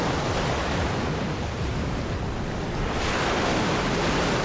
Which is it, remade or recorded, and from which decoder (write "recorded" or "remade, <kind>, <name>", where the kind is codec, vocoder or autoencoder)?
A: recorded